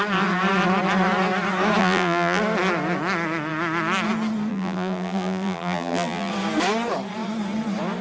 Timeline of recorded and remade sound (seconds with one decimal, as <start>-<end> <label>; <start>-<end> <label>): 0.0-1.8 recorded; 1.8-2.4 remade; 2.4-4.5 recorded; 4.5-6.3 remade; 6.3-8.0 recorded